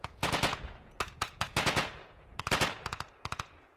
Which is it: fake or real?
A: fake